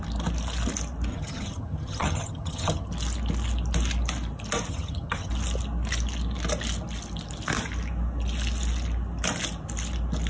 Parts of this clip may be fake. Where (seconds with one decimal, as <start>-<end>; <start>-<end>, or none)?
1.1-2.9; 4.7-5.3